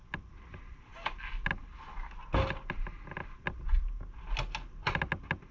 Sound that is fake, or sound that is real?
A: real